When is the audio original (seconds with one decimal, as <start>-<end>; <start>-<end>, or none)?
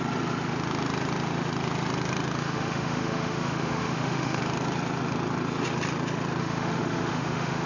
0.0-2.4; 4.4-6.4